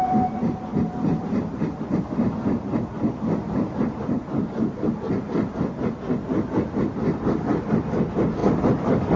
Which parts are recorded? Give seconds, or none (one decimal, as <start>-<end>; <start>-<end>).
0.0-9.2